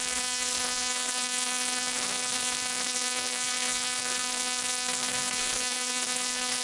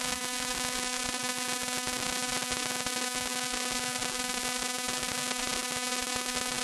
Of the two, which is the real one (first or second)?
second